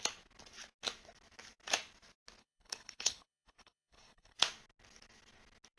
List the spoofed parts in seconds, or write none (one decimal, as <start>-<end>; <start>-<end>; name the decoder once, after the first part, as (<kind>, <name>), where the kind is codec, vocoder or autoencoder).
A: 2.4-4.4 (codec, HILCodec)